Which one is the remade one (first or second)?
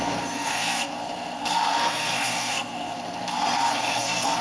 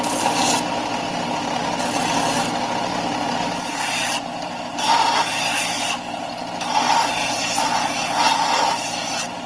first